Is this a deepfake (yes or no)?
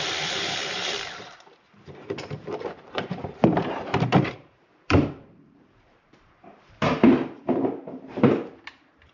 yes